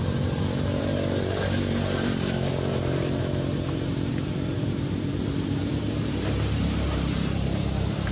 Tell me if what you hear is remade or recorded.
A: remade